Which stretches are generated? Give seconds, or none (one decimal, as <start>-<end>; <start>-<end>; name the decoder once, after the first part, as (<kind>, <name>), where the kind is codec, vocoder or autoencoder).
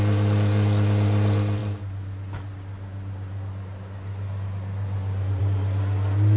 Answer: none